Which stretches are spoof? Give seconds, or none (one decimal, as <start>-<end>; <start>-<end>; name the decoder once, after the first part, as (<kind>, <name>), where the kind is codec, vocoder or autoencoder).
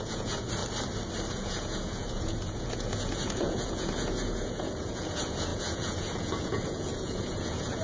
0.0-0.6 (vocoder, Vocos); 1.3-7.8